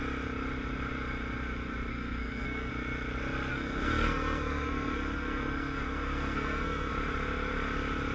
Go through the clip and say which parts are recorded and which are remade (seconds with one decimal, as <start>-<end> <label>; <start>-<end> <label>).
0.0-1.9 recorded; 1.9-2.7 remade; 2.7-3.5 recorded; 3.5-6.9 remade; 6.9-8.1 recorded